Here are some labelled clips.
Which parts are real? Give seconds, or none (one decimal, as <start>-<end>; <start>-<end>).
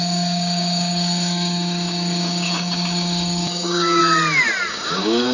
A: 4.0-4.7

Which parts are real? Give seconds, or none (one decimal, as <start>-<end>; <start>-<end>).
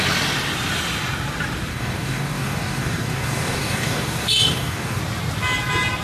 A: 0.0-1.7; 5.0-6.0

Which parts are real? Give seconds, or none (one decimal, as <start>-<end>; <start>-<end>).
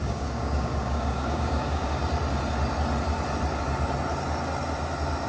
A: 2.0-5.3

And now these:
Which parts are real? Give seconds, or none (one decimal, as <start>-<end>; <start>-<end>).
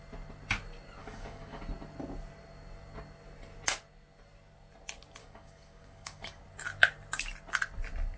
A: 0.0-1.0; 1.6-5.2; 6.4-8.2